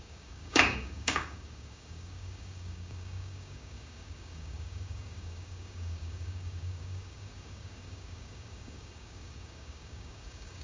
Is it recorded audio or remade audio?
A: remade